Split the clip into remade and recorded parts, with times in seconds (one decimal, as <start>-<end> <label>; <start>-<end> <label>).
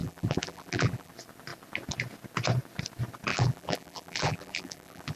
0.0-1.1 remade; 1.1-3.3 recorded; 3.3-5.2 remade